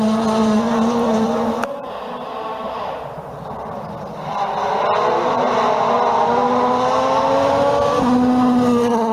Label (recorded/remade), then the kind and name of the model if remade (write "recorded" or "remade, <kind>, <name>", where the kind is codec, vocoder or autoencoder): recorded